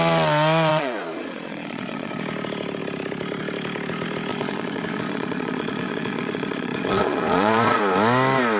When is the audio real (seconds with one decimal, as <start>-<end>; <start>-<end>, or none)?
0.0-0.7; 2.2-4.3; 7.8-8.6